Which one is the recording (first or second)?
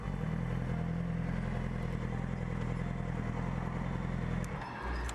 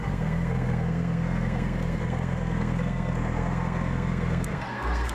first